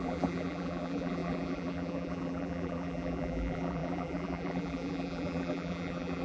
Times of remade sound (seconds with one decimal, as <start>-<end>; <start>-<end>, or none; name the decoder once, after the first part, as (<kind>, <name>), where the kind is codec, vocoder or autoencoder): 0.0-6.2 (vocoder, BigVGAN v2)